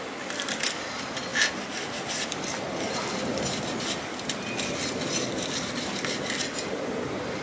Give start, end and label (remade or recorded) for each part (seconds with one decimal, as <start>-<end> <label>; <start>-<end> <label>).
0.0-7.4 remade